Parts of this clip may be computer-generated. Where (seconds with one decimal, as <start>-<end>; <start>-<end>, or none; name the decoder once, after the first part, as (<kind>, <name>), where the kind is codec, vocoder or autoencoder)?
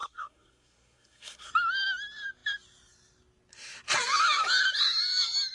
0.0-1.5 (codec, SNAC)